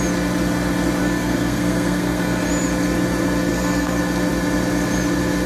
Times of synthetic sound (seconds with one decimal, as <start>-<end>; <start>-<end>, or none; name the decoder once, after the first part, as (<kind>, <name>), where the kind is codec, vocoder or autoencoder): 1.0-2.4 (codec, SNAC); 3.5-4.0